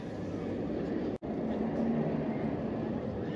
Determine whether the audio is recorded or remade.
recorded